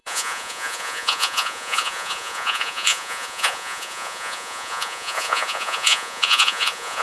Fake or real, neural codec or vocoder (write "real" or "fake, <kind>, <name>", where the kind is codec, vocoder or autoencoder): fake, vocoder, Vocos